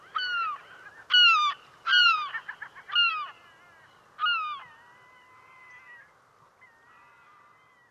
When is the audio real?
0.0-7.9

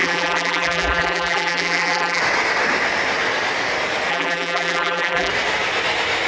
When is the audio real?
2.2-4.1; 5.3-6.3

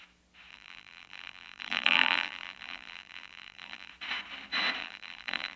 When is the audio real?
0.0-0.5; 3.9-4.8